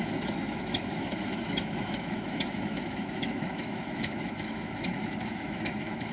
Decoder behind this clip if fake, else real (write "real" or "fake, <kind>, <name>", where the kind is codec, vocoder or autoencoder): fake, autoencoder, DAC-VAE